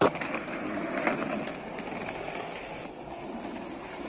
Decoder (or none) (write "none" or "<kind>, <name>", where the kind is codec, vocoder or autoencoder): none